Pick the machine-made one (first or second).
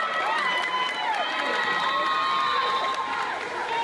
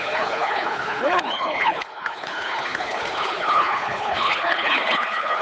second